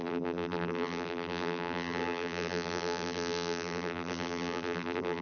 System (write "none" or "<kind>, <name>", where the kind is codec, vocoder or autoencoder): vocoder, BigVGAN v2